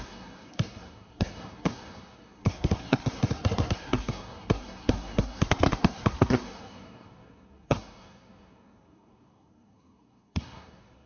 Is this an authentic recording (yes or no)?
no